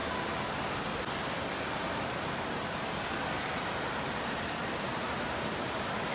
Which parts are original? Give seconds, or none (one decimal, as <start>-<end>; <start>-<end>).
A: 0.0-6.1